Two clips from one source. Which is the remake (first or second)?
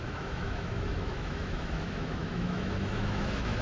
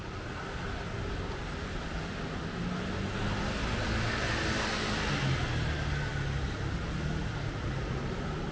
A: first